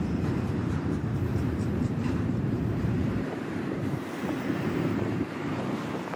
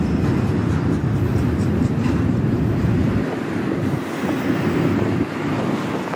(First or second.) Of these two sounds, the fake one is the first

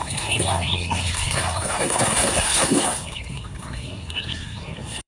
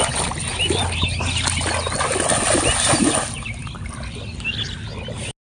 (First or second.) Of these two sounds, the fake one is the first